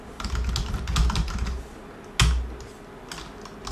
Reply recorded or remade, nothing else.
recorded